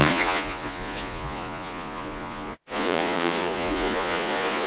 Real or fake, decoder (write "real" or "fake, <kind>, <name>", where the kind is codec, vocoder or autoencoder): fake, vocoder, Vocos